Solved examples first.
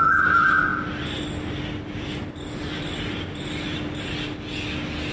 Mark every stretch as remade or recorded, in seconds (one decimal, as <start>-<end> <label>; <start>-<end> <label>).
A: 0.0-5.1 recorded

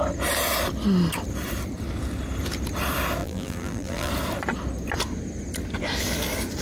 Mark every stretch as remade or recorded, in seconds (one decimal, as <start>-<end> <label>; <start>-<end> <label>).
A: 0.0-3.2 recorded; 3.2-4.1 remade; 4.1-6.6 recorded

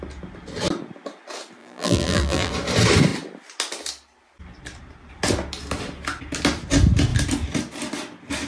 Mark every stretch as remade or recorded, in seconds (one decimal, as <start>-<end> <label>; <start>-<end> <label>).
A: 0.0-1.6 recorded; 1.6-2.5 remade; 2.5-8.5 recorded